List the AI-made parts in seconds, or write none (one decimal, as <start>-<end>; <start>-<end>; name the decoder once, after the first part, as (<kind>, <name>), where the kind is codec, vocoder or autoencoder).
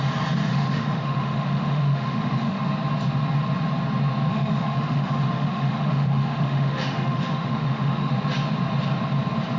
0.5-2.6 (autoencoder, DAC-VAE); 4.3-8.1